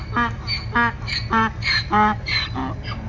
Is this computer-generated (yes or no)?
no